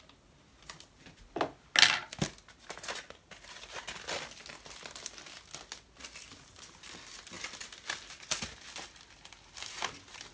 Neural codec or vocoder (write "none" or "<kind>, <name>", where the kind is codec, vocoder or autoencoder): none